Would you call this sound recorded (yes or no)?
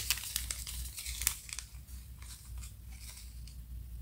yes